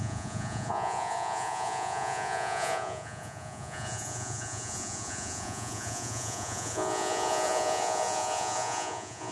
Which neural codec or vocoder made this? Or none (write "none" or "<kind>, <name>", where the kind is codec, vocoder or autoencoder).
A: vocoder, Vocos